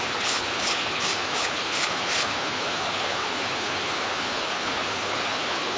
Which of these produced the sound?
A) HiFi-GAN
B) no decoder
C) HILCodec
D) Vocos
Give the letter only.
C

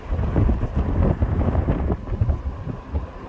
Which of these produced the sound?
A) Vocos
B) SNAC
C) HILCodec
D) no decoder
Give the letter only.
D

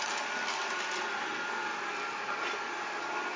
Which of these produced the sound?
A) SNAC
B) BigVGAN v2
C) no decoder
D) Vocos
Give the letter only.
C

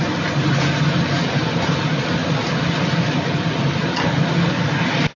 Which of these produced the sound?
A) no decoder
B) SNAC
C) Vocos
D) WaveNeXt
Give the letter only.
A